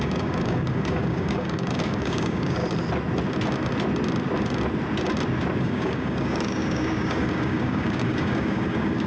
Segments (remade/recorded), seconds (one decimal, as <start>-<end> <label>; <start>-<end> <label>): 0.0-2.6 remade; 2.6-5.6 recorded; 5.6-9.1 remade